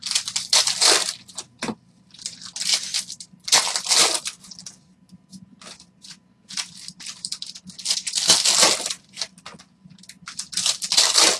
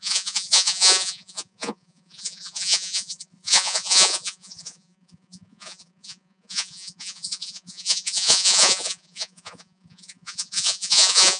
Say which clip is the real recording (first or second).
first